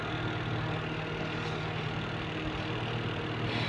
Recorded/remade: recorded